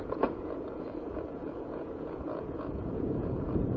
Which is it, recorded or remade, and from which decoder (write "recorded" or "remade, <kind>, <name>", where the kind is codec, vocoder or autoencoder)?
remade, vocoder, Vocos